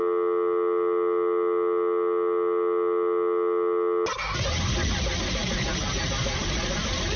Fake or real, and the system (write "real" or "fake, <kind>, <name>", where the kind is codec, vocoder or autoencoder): real